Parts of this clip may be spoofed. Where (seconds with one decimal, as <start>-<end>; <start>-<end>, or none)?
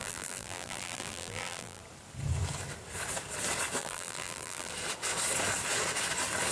0.0-1.8; 3.8-4.7